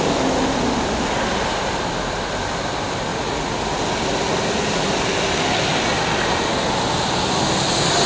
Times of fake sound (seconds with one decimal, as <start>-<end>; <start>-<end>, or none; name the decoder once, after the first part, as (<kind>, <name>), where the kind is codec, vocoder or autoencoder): 3.1-3.6 (vocoder, Vocos)